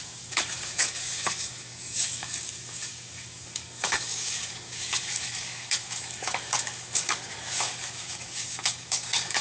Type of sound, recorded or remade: remade